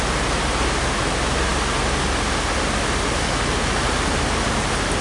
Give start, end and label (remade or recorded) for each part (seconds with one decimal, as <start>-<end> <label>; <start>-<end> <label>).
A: 0.0-5.0 recorded